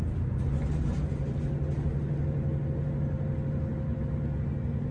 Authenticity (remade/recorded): recorded